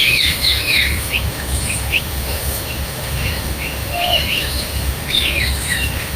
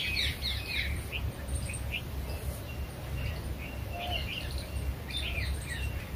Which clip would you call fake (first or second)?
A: first